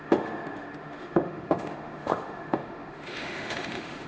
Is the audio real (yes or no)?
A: no